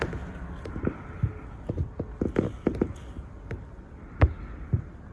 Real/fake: real